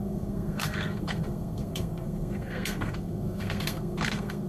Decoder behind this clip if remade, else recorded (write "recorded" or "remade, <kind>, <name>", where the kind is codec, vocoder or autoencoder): remade, codec, SNAC